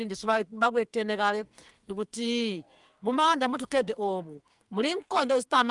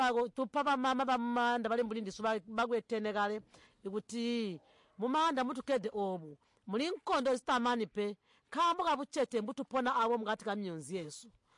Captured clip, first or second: second